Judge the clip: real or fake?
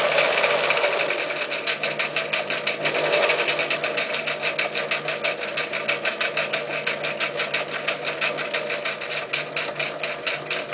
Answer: real